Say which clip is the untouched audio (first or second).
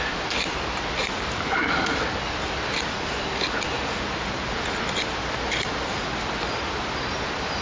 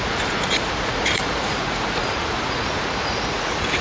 first